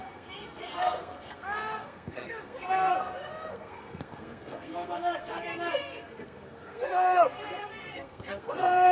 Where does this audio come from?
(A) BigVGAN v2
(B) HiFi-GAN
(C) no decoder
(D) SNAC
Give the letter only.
D